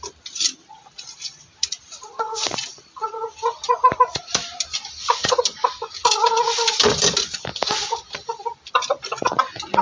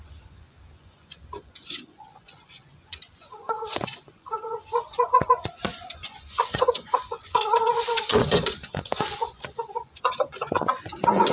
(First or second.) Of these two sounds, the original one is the first